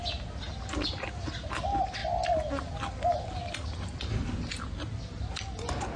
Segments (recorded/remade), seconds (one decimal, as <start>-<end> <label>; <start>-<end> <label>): 0.0-6.0 recorded